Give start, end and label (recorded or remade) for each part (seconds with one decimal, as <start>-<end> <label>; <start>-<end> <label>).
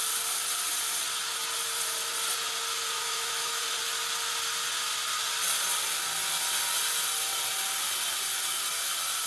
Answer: 0.0-3.0 recorded; 3.0-3.6 remade; 3.6-9.3 recorded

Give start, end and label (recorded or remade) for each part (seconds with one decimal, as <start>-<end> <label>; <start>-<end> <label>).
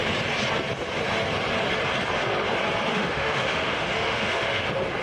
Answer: 0.0-2.9 recorded; 2.9-4.6 remade; 4.6-5.0 recorded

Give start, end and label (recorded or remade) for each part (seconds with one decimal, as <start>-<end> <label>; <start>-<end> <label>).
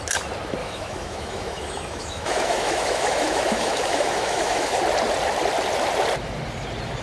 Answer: 0.0-0.6 recorded; 0.6-4.8 remade; 4.8-7.0 recorded